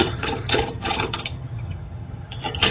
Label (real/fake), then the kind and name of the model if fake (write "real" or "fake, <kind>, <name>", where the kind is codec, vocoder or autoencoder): fake, vocoder, HiFi-GAN